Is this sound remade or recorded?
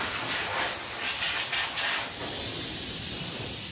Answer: remade